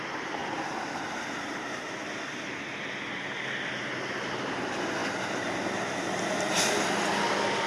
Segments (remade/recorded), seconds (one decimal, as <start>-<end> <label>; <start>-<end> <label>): 0.0-7.7 recorded